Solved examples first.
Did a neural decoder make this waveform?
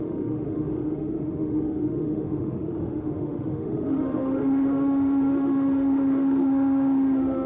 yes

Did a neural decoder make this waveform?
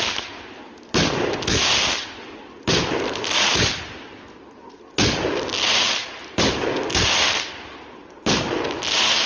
no